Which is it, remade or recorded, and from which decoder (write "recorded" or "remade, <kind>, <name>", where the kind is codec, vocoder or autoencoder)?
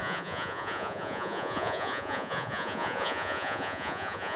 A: remade, vocoder, Vocos